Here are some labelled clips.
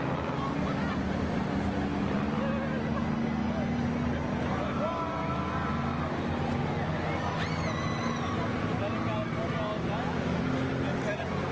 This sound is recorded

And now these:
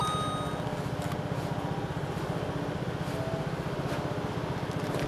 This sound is recorded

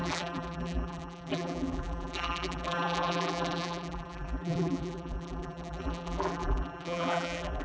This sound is remade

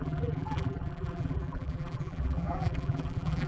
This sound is remade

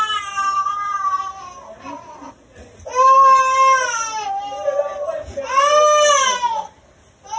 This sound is recorded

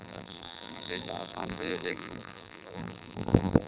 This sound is remade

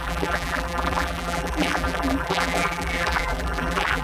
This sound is remade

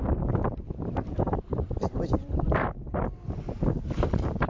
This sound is remade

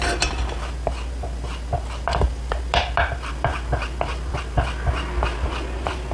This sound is recorded